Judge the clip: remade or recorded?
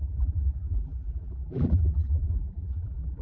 remade